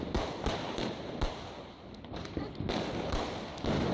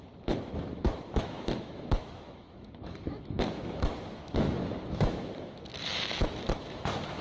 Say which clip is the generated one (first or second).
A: second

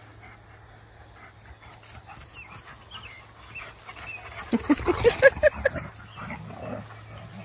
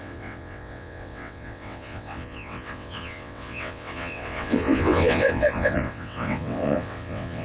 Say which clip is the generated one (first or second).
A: second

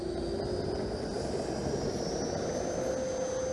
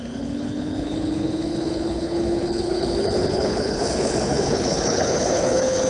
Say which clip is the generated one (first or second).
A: second